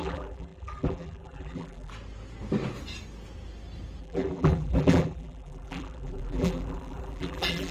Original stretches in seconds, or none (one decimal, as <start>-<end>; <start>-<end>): 1.9-4.0